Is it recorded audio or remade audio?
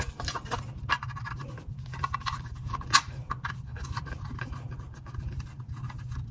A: recorded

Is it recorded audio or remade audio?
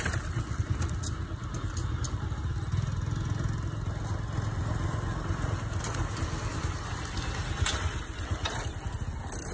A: recorded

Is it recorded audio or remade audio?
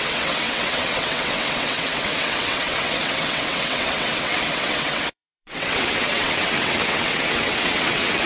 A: remade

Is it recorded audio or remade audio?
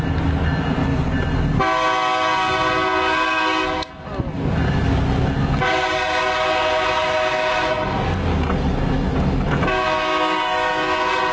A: recorded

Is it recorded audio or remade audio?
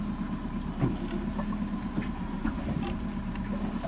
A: recorded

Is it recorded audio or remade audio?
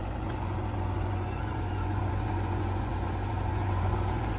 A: remade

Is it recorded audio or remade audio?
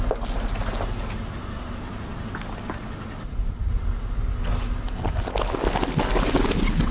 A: recorded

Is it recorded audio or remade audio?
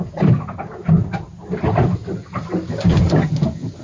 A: recorded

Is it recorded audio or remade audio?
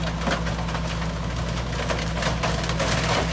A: recorded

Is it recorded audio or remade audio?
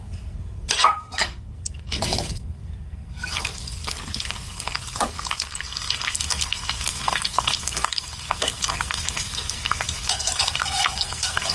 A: remade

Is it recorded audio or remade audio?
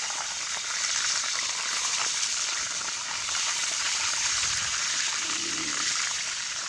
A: remade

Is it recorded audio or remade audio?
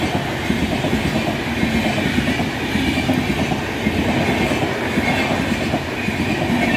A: recorded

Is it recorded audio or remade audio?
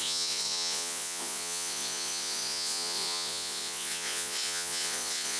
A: remade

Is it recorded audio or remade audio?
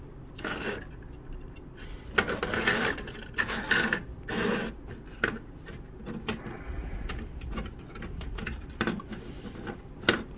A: recorded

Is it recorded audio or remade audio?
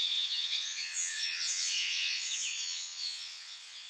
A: remade